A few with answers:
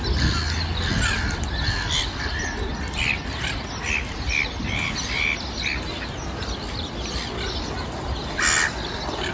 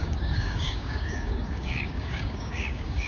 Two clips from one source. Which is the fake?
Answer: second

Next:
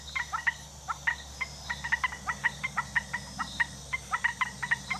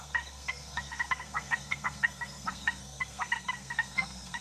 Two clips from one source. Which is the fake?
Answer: second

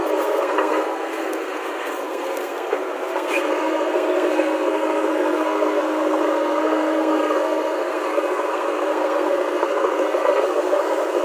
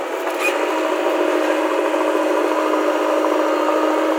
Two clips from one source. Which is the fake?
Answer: first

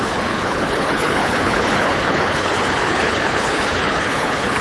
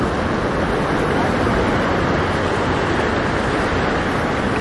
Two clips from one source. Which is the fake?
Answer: first